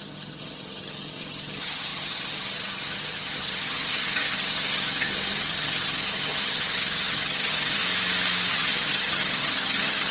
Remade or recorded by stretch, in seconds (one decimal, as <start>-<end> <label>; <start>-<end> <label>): 0.0-7.8 remade; 7.8-8.5 recorded; 8.5-10.1 remade